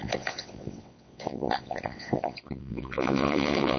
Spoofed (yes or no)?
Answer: yes